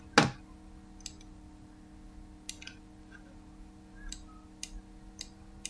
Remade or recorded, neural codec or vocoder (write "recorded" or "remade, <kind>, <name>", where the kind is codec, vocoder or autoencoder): recorded